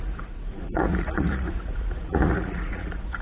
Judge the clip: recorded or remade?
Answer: remade